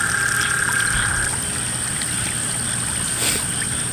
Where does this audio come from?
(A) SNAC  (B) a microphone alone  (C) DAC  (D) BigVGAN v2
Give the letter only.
B